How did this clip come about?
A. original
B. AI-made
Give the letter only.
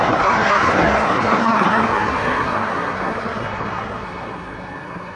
B